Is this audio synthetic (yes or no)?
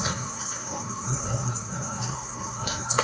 yes